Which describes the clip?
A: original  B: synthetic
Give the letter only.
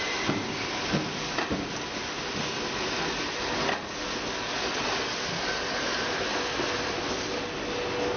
A